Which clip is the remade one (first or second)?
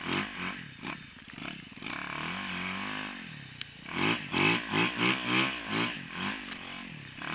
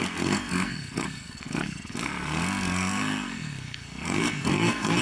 second